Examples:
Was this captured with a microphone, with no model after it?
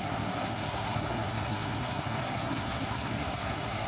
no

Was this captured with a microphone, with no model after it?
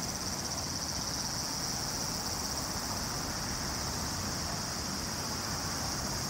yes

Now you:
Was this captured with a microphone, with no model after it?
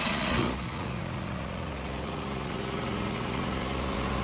no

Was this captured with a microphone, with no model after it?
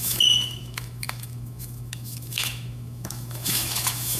no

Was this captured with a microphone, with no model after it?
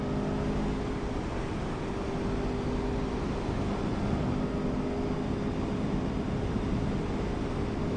yes